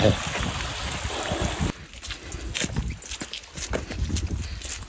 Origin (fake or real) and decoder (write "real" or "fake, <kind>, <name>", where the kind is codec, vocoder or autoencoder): real